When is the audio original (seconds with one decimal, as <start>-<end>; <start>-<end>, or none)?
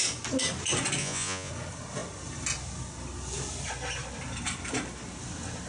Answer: 0.0-1.0; 1.5-5.7